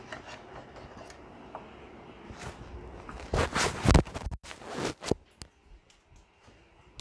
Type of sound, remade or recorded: recorded